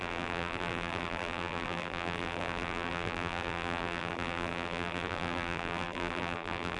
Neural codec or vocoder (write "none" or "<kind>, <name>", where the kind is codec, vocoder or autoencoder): vocoder, BigVGAN v2